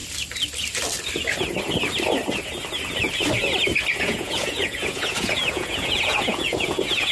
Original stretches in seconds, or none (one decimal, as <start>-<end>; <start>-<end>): 0.0-4.0